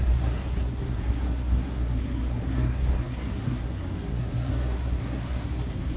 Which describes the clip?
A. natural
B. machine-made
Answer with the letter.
B